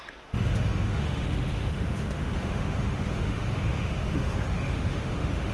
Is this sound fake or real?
fake